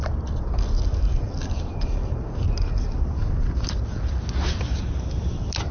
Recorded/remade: recorded